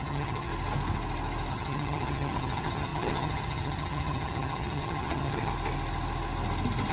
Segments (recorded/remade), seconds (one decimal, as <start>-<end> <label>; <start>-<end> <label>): 0.0-0.5 remade; 0.5-1.5 recorded; 1.5-5.5 remade; 5.5-6.9 recorded